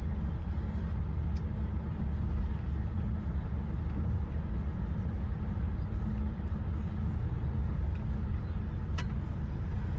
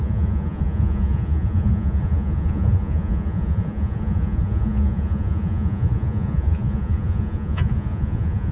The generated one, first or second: second